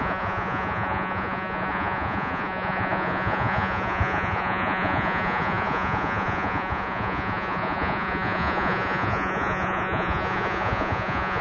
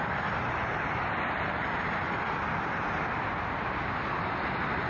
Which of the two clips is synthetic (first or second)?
first